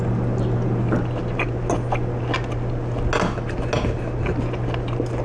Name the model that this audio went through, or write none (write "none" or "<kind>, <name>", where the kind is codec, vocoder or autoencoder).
none